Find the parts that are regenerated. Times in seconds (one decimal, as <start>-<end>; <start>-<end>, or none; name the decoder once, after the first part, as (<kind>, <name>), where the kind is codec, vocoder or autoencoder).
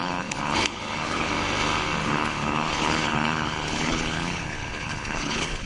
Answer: 0.0-1.3 (codec, HILCodec); 2.0-5.7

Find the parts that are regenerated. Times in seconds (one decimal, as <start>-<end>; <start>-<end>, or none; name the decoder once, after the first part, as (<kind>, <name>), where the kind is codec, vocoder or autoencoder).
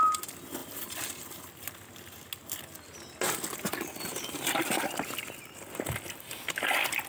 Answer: none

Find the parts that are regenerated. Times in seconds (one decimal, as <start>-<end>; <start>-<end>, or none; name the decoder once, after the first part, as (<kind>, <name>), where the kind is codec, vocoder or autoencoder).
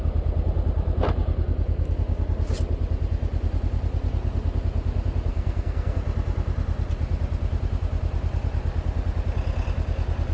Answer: 5.3-6.0 (codec, SNAC)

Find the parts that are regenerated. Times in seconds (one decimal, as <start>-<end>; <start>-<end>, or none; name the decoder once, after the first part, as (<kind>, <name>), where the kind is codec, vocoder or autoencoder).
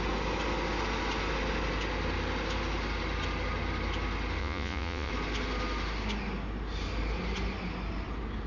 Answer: 4.4-5.1 (vocoder, Vocos)